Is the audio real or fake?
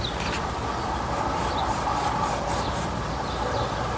real